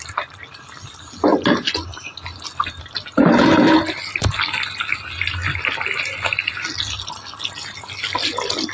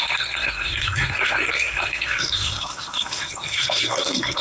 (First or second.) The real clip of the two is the first